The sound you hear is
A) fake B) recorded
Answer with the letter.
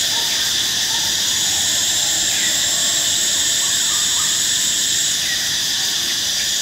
A